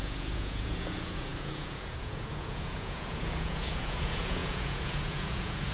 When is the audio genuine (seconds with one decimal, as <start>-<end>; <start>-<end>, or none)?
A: none